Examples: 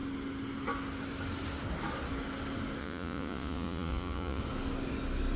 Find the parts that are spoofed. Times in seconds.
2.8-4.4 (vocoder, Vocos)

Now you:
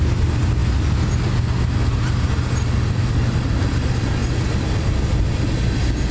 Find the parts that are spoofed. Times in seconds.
none